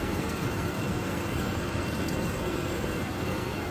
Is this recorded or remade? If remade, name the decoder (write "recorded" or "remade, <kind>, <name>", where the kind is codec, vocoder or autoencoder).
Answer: remade, codec, SNAC